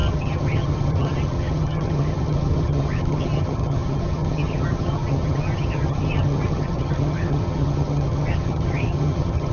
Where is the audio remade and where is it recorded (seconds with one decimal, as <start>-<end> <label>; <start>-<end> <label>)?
0.0-9.5 remade